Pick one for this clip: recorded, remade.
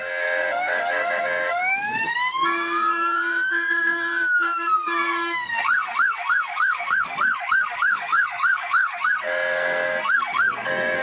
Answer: remade